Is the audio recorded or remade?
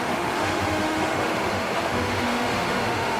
remade